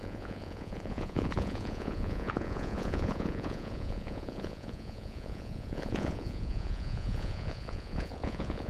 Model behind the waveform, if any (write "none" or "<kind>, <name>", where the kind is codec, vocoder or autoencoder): vocoder, Vocos